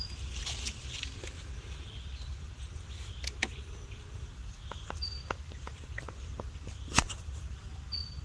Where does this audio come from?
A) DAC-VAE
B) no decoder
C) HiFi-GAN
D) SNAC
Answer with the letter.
B